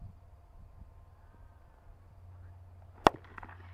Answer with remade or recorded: recorded